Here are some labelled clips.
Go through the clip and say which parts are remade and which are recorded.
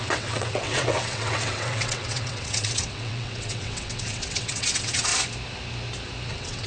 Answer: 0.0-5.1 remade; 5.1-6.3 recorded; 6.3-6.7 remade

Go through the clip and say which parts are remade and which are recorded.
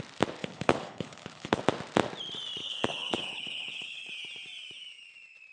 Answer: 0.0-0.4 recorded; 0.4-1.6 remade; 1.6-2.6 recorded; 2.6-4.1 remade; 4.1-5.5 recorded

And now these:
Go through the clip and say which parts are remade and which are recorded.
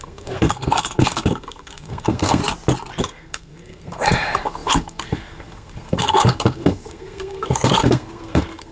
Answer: 0.0-2.4 remade; 2.4-3.0 recorded; 3.0-8.7 remade